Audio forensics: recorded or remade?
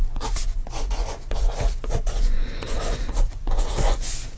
remade